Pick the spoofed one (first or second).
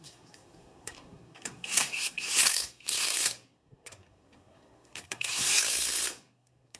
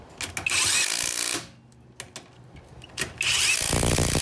first